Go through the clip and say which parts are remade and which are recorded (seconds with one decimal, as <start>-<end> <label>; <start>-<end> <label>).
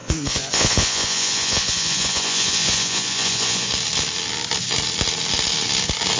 0.0-3.7 remade; 3.7-6.2 recorded